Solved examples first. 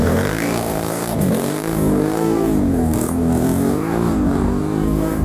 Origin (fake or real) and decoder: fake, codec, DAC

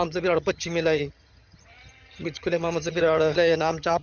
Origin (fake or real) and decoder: fake, vocoder, HiFi-GAN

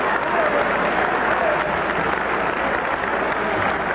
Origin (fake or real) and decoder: real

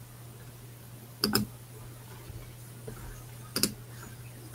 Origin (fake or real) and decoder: real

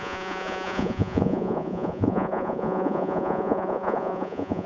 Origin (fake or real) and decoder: fake, vocoder, Vocos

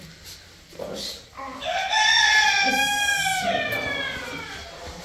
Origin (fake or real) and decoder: real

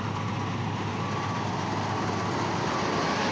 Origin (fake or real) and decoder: real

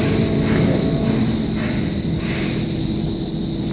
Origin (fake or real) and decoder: real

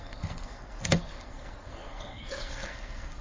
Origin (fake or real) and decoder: fake, codec, SNAC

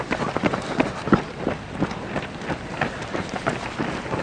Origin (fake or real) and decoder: real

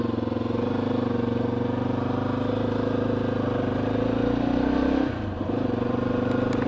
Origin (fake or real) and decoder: real